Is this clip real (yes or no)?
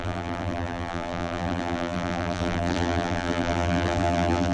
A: no